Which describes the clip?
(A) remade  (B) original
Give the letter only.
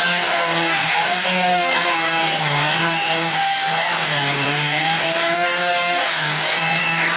A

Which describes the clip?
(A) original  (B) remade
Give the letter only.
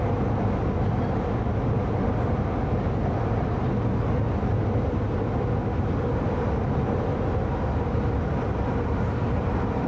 A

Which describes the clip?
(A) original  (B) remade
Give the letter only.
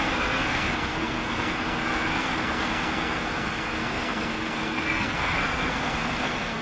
B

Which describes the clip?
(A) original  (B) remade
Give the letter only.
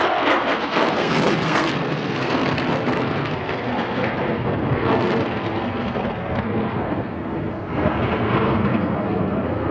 B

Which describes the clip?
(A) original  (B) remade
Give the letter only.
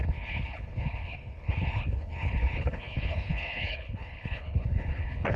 B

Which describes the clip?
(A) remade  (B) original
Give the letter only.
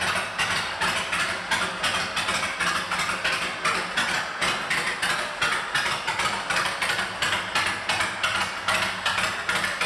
B